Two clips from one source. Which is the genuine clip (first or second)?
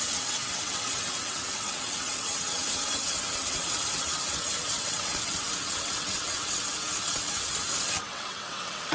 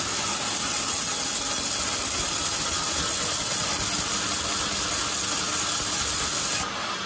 second